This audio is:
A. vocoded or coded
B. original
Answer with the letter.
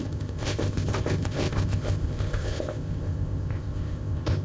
A